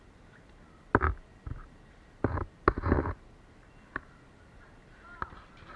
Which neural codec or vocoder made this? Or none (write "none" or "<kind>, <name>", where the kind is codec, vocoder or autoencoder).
none